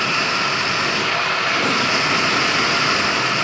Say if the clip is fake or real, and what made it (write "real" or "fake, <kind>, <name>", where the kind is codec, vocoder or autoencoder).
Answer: real